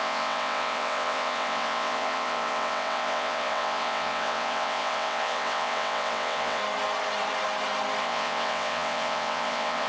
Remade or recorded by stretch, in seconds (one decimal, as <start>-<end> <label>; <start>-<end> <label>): 0.0-6.6 remade; 6.6-8.0 recorded; 8.0-9.9 remade